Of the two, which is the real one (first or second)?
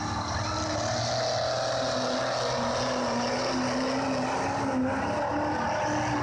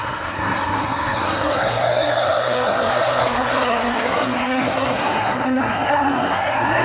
first